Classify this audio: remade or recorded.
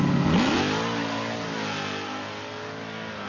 recorded